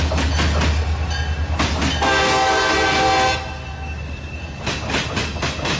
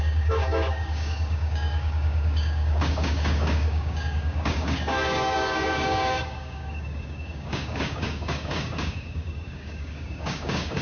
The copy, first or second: second